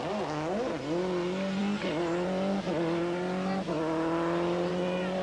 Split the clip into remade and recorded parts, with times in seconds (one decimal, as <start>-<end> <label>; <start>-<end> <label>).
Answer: 0.0-5.2 recorded